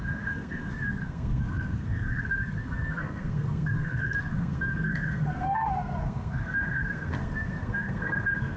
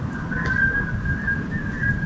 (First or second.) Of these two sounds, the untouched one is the second